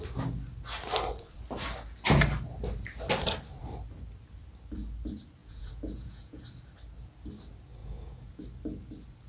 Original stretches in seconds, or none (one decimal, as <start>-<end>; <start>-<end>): 0.0-5.4; 6.4-7.8; 8.4-9.3